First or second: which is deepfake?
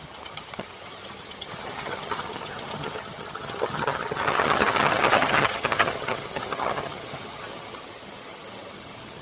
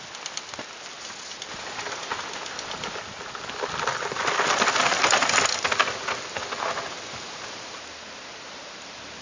first